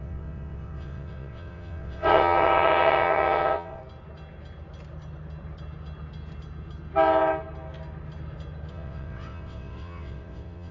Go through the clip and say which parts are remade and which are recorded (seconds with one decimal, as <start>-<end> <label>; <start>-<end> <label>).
0.0-3.8 remade; 3.8-8.7 recorded; 8.7-10.7 remade